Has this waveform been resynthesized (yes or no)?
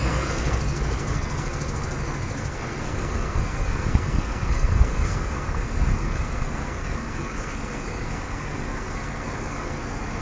yes